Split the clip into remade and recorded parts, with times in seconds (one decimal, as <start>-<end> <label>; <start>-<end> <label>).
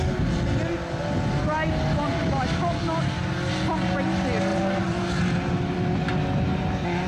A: 0.0-4.5 recorded; 4.5-5.2 remade; 5.2-7.1 recorded